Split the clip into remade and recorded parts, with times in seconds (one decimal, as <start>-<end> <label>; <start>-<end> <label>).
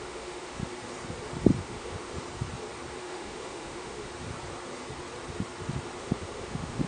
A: 0.0-0.6 remade; 0.6-1.6 recorded; 1.6-2.1 remade; 2.1-3.0 recorded; 3.0-4.1 remade; 4.1-6.0 recorded; 6.0-6.9 remade